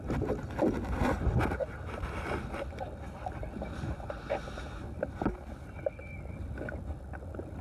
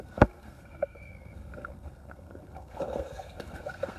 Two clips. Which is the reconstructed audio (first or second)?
second